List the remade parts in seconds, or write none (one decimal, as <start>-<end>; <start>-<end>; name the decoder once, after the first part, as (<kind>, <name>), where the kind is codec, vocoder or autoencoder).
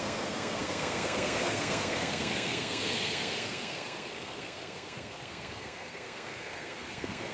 0.0-7.3 (codec, SNAC)